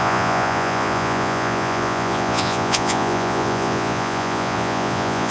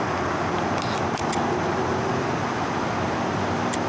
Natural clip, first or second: second